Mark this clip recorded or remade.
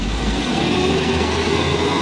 remade